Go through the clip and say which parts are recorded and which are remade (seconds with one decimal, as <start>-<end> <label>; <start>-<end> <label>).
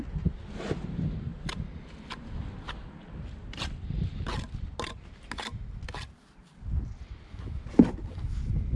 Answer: 0.0-8.8 recorded